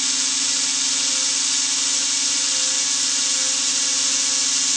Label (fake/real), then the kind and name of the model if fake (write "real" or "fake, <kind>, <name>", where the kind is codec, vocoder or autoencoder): real